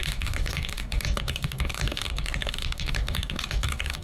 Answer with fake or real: fake